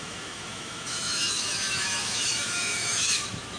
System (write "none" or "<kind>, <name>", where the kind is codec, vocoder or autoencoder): autoencoder, DAC-VAE